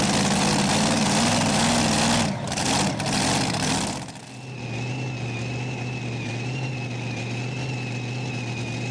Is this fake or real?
real